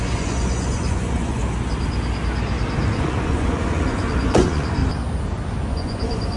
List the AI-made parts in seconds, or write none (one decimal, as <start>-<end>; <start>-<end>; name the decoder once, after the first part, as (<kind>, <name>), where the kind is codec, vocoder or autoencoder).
0.0-1.4 (vocoder, Vocos); 3.0-4.8; 5.7-6.4